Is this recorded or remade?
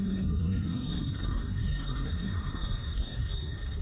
remade